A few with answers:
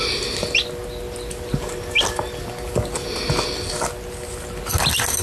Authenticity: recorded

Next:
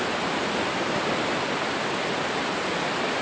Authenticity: recorded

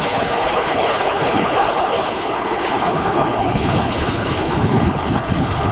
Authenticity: remade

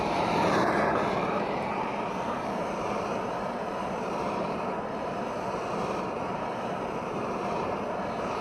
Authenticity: remade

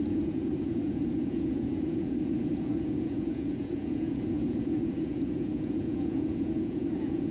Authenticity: remade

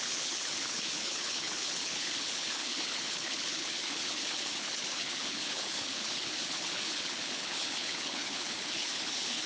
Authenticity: remade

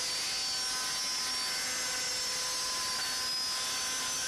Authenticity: recorded